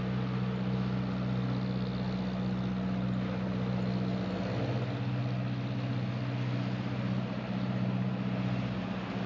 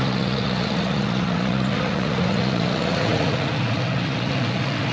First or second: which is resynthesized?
second